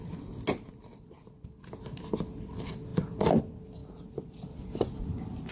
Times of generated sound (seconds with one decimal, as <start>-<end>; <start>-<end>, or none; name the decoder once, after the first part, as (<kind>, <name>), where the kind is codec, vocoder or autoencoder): none